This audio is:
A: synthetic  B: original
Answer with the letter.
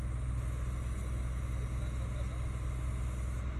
B